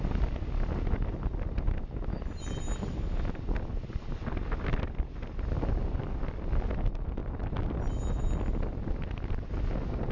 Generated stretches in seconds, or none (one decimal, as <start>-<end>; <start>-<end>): none